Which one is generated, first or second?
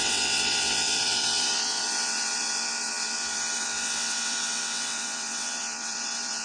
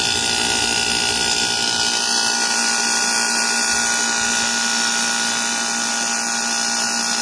first